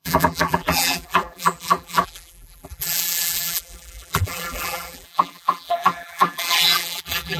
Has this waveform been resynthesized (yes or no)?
yes